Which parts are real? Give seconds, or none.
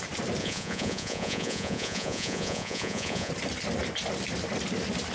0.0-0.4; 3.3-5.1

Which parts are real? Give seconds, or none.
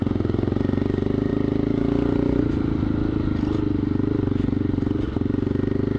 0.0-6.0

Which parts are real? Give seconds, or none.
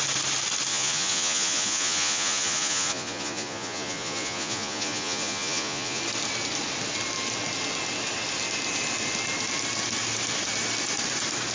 0.0-0.7; 6.0-11.5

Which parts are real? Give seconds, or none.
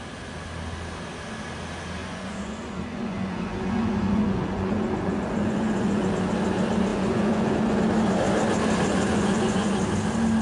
0.0-2.0; 6.1-6.9; 7.8-8.9; 9.8-10.4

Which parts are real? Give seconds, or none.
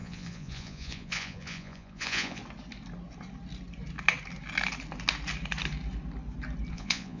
2.4-6.7